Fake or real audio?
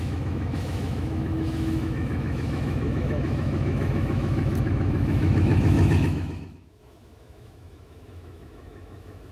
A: fake